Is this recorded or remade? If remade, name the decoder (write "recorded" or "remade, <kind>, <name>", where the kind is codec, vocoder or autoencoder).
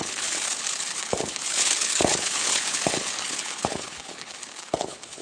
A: remade, codec, HILCodec